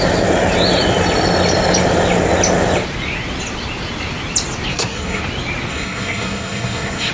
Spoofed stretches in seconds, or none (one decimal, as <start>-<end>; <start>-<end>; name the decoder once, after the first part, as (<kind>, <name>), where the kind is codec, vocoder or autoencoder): 4.7-5.2 (codec, SNAC); 5.7-7.1